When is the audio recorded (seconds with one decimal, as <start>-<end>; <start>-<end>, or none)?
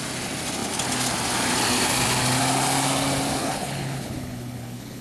0.0-3.4